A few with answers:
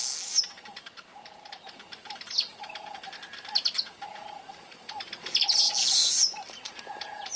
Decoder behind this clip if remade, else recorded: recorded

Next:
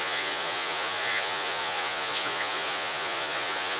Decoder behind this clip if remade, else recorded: remade, vocoder, Vocos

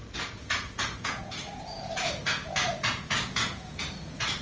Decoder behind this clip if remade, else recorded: remade, vocoder, Vocos